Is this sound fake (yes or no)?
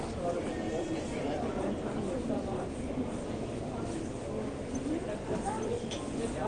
no